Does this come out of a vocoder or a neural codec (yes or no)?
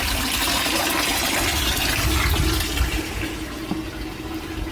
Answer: yes